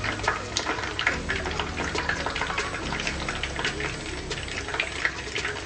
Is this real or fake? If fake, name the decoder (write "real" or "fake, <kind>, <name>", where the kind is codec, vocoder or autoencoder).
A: real